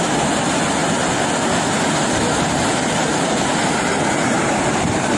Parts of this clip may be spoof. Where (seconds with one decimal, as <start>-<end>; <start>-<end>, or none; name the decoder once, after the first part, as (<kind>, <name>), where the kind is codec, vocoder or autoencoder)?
none